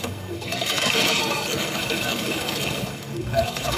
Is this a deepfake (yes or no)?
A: yes